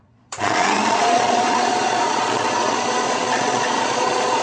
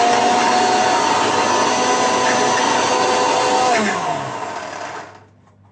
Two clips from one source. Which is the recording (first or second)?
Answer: second